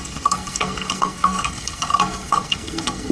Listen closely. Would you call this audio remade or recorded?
remade